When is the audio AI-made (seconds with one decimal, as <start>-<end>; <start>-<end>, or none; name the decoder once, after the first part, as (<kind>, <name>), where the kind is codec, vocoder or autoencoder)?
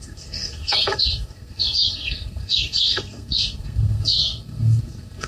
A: 0.0-5.3 (codec, SNAC)